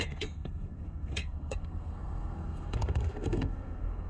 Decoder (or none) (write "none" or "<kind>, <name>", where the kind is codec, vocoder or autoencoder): codec, SNAC